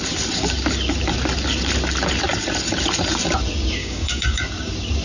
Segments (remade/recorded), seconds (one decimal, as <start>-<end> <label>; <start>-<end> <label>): 0.0-3.8 recorded; 3.8-4.4 remade; 4.4-5.0 recorded